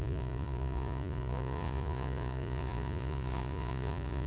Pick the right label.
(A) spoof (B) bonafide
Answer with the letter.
A